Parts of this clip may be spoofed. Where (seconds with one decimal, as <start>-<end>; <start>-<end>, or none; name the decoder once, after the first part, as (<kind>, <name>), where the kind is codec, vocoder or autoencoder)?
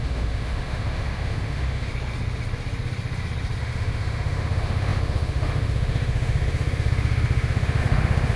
0.0-1.9 (autoencoder, DAC-VAE); 3.6-8.4